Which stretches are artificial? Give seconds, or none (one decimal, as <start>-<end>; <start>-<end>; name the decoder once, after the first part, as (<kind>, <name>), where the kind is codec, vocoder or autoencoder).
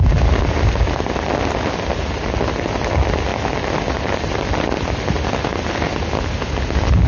none